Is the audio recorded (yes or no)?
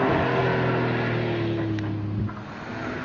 yes